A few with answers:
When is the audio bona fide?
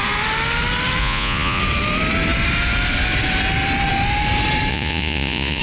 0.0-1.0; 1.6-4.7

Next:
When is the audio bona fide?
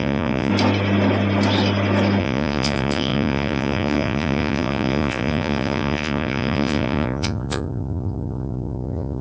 0.5-2.2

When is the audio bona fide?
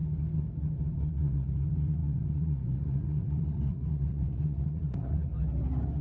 0.0-1.1; 5.3-6.0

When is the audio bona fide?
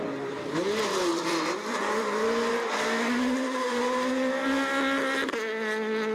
0.0-1.1; 2.5-6.1